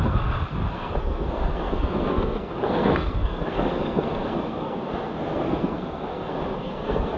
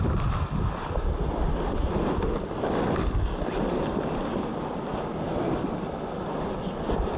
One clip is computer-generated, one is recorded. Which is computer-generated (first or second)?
first